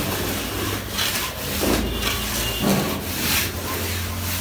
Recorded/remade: recorded